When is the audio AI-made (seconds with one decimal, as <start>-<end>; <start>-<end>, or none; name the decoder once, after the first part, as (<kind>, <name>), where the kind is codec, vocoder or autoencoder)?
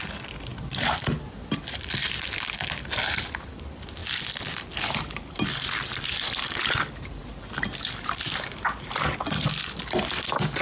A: 0.5-2.4 (vocoder, BigVGAN v2)